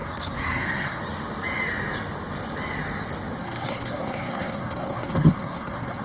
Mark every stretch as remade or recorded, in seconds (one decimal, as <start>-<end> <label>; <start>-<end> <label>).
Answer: 0.0-1.0 remade; 1.0-3.4 recorded; 3.4-6.0 remade